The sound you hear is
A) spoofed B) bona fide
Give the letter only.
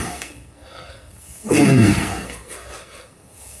A